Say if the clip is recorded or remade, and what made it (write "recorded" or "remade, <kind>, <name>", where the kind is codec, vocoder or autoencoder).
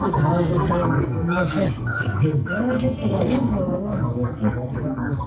remade, codec, SNAC